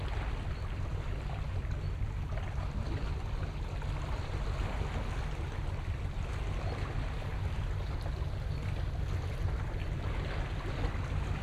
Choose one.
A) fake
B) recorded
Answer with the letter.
B